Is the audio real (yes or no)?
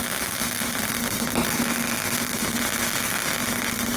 yes